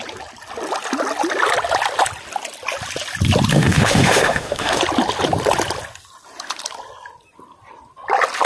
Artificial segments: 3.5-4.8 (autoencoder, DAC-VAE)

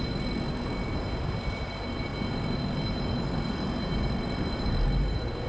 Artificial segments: none

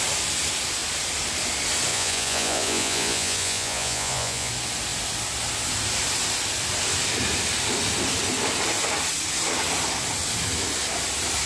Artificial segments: 1.9-4.5 (vocoder, Vocos)

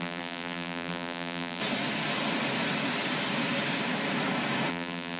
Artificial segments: 0.0-1.6 (vocoder, BigVGAN v2); 4.7-5.2